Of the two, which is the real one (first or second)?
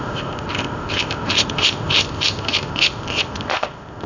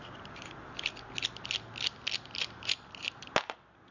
second